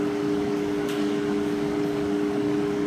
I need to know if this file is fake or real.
fake